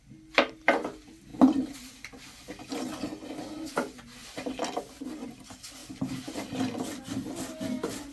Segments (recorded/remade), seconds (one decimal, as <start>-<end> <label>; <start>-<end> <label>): 0.0-1.3 recorded; 1.3-2.7 remade; 2.7-4.2 recorded; 4.2-4.8 remade; 4.8-8.1 recorded